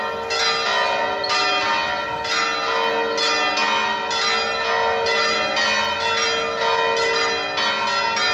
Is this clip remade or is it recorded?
recorded